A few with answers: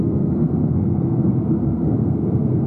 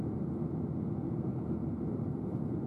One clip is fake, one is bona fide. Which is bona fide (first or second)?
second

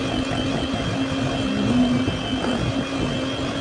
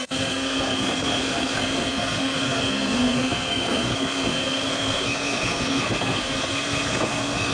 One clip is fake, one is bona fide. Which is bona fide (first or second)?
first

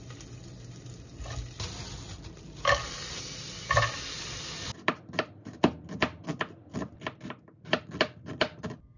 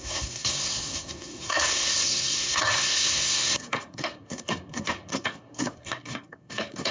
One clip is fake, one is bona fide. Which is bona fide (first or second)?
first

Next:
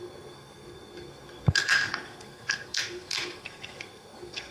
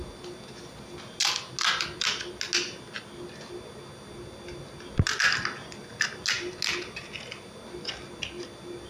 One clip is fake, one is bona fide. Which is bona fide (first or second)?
second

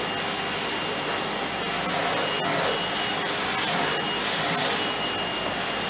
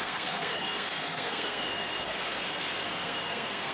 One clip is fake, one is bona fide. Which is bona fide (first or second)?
first